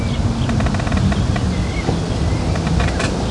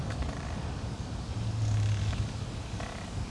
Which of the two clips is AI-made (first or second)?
second